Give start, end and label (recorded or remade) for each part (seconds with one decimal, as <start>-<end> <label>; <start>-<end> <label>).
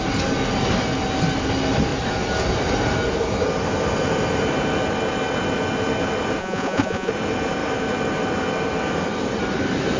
0.0-6.4 recorded; 6.4-7.1 remade; 7.1-10.0 recorded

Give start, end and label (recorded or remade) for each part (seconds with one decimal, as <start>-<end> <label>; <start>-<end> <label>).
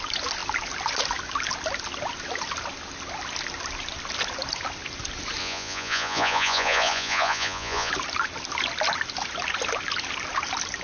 0.0-5.4 recorded; 5.4-7.9 remade; 7.9-10.8 recorded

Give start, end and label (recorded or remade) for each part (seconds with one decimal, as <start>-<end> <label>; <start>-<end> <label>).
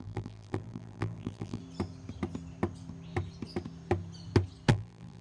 0.0-1.6 remade; 1.6-4.7 recorded; 4.7-5.2 remade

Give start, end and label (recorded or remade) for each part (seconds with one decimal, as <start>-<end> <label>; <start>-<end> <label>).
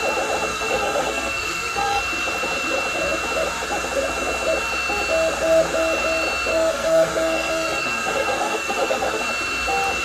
0.0-0.5 recorded; 0.5-2.0 remade; 2.0-6.5 recorded; 6.5-9.2 remade; 9.2-10.0 recorded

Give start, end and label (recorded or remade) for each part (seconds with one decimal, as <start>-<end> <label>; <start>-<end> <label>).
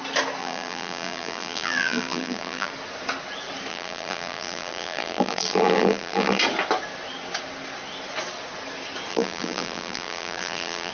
0.0-0.4 recorded; 0.4-2.7 remade; 2.7-3.7 recorded; 3.7-6.4 remade; 6.4-9.1 recorded; 9.1-10.9 remade